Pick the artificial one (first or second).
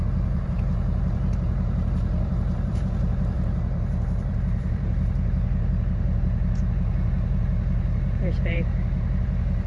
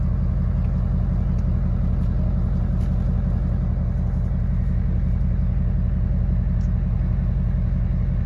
first